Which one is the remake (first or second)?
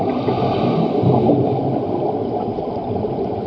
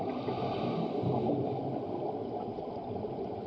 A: first